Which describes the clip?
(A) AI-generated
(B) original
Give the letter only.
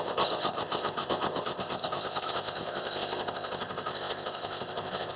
A